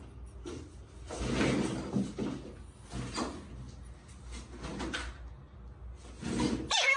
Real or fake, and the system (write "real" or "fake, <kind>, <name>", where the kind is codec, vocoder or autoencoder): real